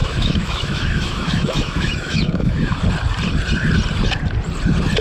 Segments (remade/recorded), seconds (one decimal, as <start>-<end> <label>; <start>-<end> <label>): 0.0-2.8 remade; 2.8-5.0 recorded